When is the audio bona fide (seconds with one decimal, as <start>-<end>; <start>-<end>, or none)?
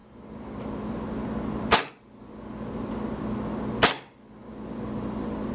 0.0-5.5